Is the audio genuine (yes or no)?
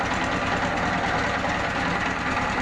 yes